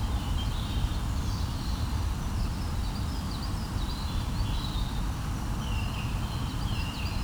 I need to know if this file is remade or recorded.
remade